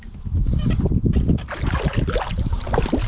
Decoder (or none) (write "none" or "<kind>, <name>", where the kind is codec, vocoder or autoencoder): none